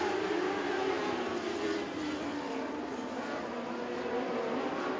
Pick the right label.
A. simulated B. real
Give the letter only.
B